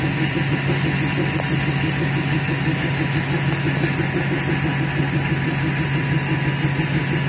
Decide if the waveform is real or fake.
real